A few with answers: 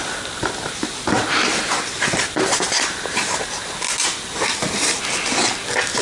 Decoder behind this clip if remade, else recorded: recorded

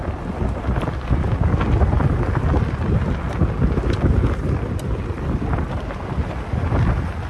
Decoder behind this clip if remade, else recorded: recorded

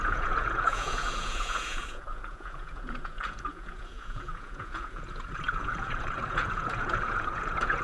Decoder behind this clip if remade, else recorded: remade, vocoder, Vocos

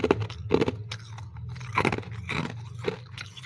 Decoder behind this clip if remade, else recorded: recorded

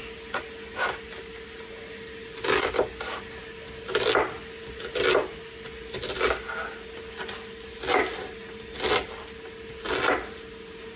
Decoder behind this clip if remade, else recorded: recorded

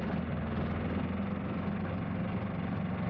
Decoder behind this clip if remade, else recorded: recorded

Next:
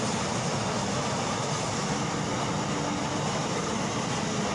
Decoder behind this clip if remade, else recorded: recorded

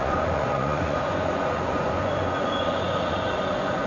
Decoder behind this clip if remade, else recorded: remade, vocoder, Vocos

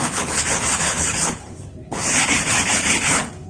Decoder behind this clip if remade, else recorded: remade, codec, HILCodec